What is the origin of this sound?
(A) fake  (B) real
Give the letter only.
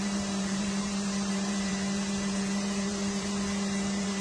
A